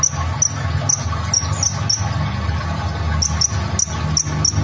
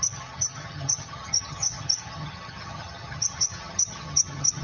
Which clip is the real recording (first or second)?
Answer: first